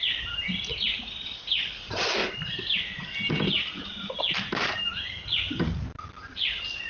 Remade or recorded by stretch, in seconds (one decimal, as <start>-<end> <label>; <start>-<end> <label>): 0.0-6.9 recorded